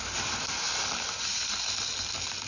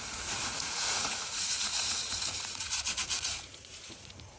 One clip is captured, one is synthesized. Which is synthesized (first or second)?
second